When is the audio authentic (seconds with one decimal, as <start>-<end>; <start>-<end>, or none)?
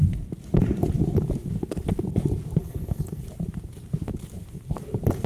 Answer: 0.0-2.6; 3.2-5.3